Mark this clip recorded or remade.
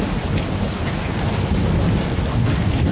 recorded